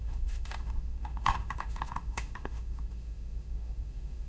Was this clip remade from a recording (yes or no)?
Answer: yes